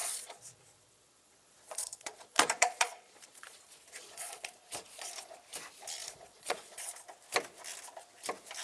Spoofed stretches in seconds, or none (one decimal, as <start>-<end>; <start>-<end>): 0.0-5.1; 6.0-6.9